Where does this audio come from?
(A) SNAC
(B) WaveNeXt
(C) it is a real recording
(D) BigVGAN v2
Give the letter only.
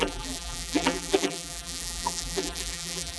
D